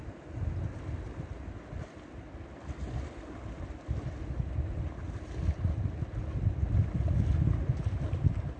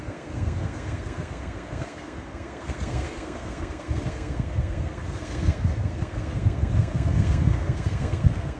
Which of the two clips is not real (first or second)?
second